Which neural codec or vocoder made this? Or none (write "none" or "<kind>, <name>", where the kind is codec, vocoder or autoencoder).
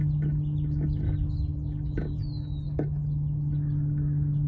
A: none